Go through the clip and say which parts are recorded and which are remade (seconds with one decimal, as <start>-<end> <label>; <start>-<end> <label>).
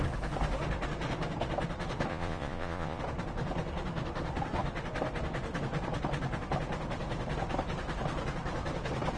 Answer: 0.0-2.1 recorded; 2.1-3.0 remade; 3.0-9.2 recorded